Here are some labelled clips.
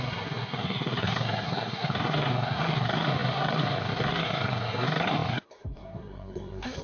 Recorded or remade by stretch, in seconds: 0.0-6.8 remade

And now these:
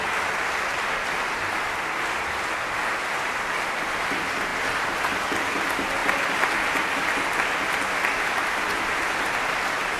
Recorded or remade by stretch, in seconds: 0.0-10.0 recorded

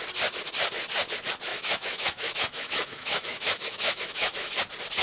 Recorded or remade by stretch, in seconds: 0.0-1.5 recorded; 1.5-4.5 remade; 4.5-5.0 recorded

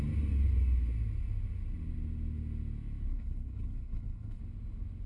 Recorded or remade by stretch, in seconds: 0.0-3.1 recorded; 3.1-4.4 remade; 4.4-5.1 recorded

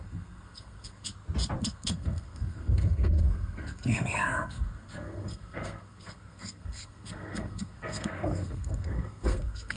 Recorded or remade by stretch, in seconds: 0.0-1.1 remade; 1.1-1.6 recorded; 1.6-9.8 remade